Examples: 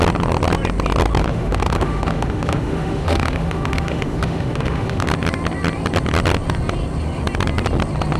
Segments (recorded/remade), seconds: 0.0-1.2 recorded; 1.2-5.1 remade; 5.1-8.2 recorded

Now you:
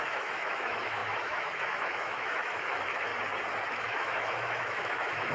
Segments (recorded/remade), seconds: 0.0-3.1 remade; 3.1-3.7 recorded; 3.7-5.3 remade

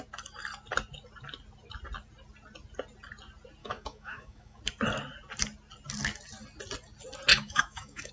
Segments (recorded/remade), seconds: 0.0-3.6 recorded; 3.6-4.6 remade; 4.6-7.3 recorded; 7.3-8.1 remade

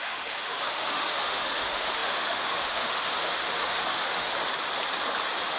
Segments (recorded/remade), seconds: 0.0-4.3 remade; 4.3-5.6 recorded

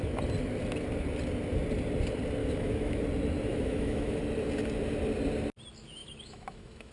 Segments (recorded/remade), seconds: 0.0-2.4 recorded; 2.4-3.0 remade; 3.0-3.5 recorded; 3.5-4.2 remade; 4.2-6.0 recorded; 6.0-6.9 remade

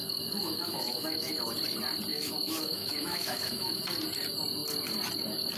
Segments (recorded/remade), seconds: 0.0-1.5 remade; 1.5-2.1 recorded; 2.1-3.8 remade; 3.8-5.6 recorded

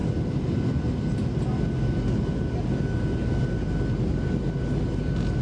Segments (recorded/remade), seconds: 0.0-5.4 recorded

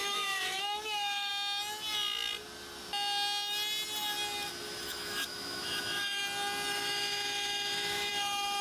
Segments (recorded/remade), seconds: 0.0-1.3 remade; 1.3-4.8 recorded; 4.8-6.2 remade; 6.2-6.7 recorded; 6.7-8.6 remade